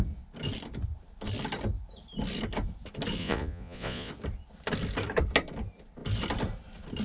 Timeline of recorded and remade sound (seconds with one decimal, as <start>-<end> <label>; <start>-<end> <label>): 0.0-3.2 recorded; 3.2-4.1 remade; 4.1-7.0 recorded